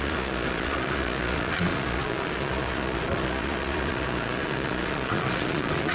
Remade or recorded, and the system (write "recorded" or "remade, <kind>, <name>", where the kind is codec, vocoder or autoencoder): remade, vocoder, Vocos